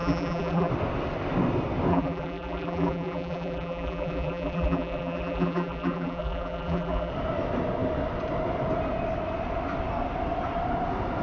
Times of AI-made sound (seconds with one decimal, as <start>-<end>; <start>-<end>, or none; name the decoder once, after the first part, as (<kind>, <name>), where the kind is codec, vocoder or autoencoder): 0.0-0.7 (vocoder, BigVGAN v2); 1.9-7.1